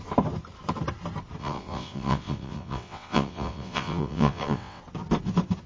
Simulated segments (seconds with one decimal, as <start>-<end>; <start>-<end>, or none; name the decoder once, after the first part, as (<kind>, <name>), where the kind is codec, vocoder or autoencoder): 1.4-4.8 (vocoder, WaveNeXt)